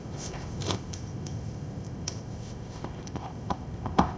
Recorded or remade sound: remade